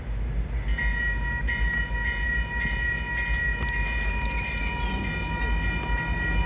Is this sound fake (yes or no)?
no